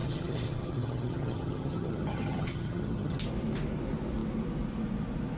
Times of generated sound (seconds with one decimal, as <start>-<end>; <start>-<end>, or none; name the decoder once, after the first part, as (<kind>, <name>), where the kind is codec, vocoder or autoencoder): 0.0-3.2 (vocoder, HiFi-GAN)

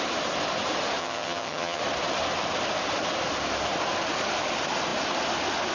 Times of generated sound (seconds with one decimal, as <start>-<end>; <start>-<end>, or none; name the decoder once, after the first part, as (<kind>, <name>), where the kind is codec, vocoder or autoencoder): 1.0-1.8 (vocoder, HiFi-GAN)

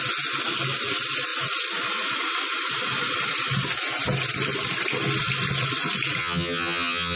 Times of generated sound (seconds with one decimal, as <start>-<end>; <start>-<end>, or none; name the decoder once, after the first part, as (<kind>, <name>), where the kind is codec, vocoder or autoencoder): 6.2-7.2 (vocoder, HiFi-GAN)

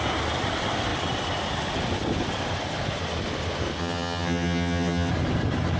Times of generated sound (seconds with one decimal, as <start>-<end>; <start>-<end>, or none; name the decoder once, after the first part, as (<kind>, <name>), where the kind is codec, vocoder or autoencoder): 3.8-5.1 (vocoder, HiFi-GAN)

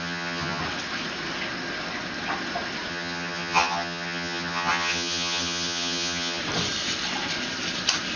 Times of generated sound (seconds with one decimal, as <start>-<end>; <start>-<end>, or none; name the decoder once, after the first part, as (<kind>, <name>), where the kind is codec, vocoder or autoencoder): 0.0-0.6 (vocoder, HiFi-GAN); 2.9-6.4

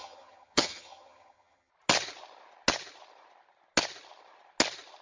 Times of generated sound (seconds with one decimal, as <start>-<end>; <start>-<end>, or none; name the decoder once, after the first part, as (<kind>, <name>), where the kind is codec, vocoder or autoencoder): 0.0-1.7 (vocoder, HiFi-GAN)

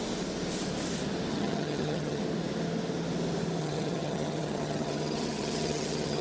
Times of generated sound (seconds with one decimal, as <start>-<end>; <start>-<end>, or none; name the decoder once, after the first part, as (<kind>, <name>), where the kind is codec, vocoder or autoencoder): 1.3-2.2 (vocoder, HiFi-GAN); 3.6-6.2